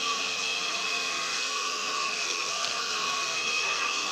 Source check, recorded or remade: remade